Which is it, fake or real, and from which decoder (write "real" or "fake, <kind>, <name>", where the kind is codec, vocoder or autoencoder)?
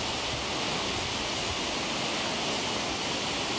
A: real